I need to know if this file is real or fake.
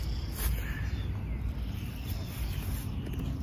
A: real